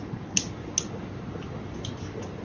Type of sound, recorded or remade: recorded